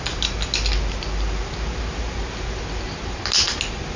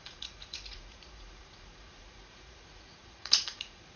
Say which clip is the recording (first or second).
first